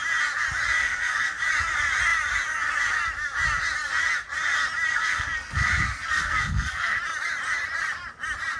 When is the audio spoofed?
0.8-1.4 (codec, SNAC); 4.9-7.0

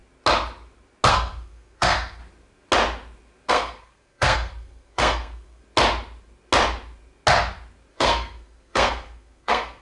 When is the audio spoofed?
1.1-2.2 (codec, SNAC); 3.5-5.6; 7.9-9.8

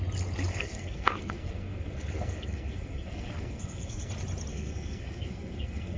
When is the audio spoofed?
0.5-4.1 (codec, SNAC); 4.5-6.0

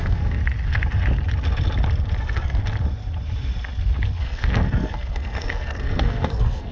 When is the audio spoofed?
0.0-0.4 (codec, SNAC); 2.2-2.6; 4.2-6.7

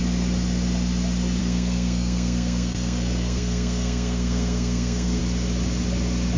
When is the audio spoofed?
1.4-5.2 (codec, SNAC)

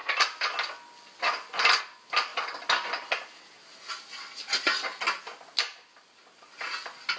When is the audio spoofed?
none

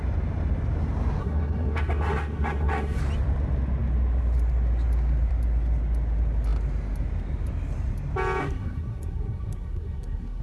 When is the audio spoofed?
1.2-3.0 (codec, SNAC); 8.4-10.4

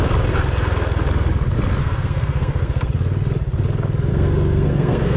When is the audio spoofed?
1.8-2.9 (codec, SNAC); 4.1-5.2